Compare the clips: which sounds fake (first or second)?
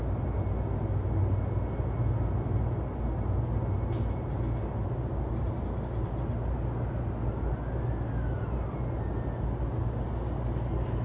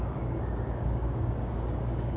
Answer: second